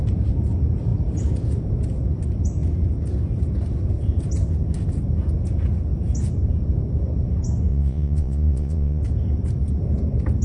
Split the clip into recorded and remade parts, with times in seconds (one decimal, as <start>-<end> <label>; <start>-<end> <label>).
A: 0.0-7.7 recorded; 7.7-9.0 remade; 9.0-10.4 recorded